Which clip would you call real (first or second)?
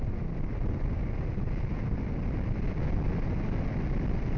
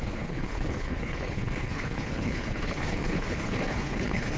first